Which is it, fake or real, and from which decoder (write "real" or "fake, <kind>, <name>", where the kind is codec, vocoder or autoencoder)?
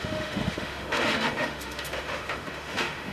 fake, autoencoder, DAC-VAE